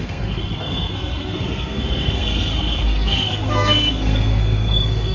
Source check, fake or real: fake